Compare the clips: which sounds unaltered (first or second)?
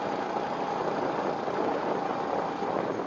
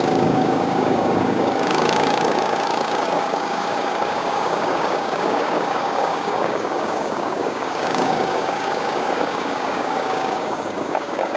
first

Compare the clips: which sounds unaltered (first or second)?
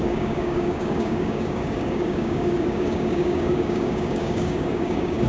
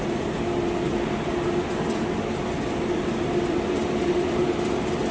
second